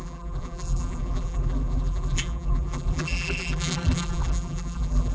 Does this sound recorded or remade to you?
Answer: remade